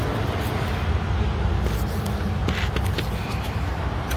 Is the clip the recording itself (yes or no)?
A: yes